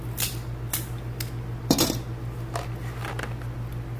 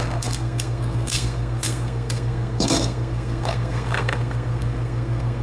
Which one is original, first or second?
first